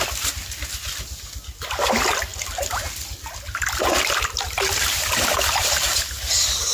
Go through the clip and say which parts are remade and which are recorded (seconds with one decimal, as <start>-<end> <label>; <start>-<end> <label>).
0.0-6.7 recorded